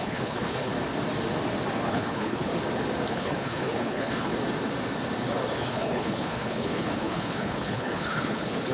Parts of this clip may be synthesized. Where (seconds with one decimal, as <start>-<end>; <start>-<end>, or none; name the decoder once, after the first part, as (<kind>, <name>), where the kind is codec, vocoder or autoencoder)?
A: 0.0-0.7 (codec, HILCodec); 1.9-2.5; 3.1-4.3; 5.7-8.7